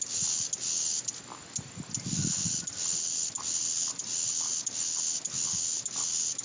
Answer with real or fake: real